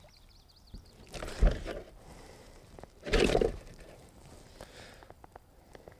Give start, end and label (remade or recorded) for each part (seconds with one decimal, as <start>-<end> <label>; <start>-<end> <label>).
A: 0.0-2.1 recorded; 2.1-4.3 remade; 4.3-6.0 recorded